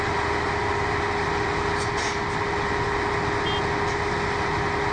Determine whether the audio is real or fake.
real